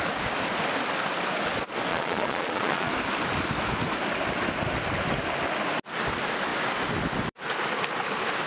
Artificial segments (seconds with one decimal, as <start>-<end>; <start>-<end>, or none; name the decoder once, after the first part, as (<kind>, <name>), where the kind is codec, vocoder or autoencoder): 1.9-2.9 (vocoder, Vocos)